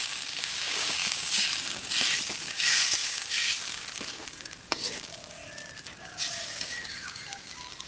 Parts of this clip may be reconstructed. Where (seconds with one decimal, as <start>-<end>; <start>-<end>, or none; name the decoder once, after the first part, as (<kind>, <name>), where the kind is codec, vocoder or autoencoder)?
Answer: 0.0-5.4 (codec, DAC); 6.0-7.9